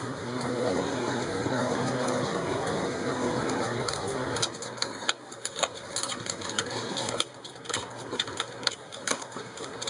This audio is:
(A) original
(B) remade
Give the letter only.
B